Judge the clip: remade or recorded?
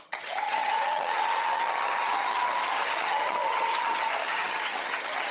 remade